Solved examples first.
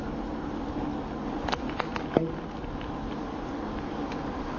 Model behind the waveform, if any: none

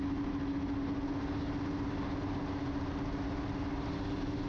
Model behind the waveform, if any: none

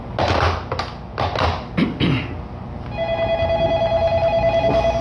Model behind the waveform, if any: none